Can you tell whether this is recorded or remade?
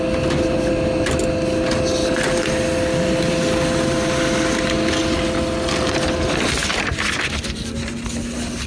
recorded